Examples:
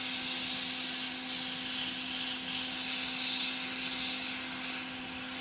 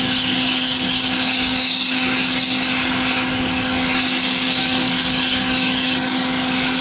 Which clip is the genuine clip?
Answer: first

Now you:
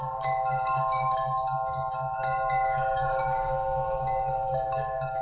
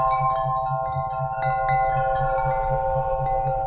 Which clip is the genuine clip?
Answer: second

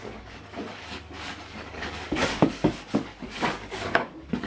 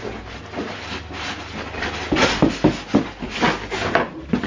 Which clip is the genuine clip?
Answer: second